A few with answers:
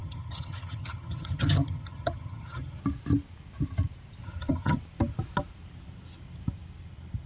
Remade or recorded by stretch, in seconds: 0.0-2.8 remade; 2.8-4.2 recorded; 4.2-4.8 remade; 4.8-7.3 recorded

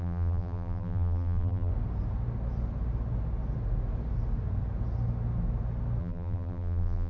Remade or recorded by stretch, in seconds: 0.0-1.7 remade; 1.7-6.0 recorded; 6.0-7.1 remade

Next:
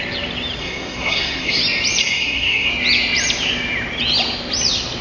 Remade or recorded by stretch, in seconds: 0.0-0.6 recorded; 0.6-1.6 remade; 1.6-2.0 recorded; 2.0-2.7 remade; 2.7-5.0 recorded

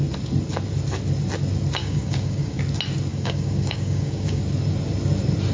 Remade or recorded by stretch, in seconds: 0.0-1.8 recorded; 1.8-2.6 remade; 2.6-3.1 recorded; 3.1-4.4 remade; 4.4-5.5 recorded

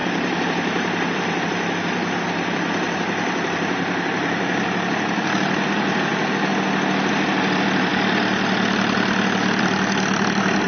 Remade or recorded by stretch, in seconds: 0.0-6.1 remade; 6.1-7.1 recorded; 7.1-7.9 remade; 7.9-9.6 recorded; 9.6-10.7 remade

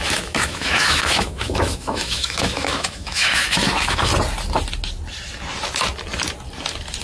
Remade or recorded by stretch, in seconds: 0.0-4.1 remade; 4.1-7.0 recorded

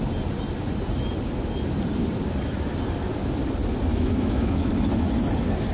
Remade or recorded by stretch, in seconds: 0.0-3.9 recorded; 3.9-4.7 remade; 4.7-5.7 recorded